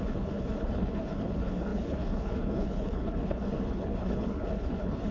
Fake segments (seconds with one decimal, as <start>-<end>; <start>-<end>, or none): 0.0-5.1